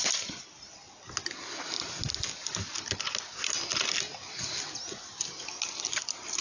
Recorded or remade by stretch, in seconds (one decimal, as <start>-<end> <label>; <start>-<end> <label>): 0.0-6.4 recorded